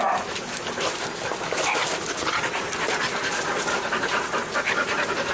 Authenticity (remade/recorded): recorded